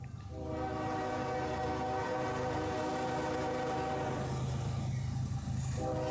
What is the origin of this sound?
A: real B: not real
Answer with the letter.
A